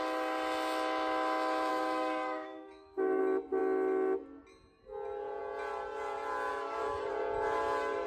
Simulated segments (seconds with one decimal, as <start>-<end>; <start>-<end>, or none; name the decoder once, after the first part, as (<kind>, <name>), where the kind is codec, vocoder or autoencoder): 1.7-3.2 (codec, DAC); 6.5-7.1